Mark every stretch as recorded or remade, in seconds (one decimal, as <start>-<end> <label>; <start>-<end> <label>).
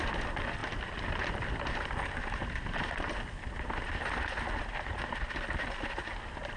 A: 0.0-6.6 recorded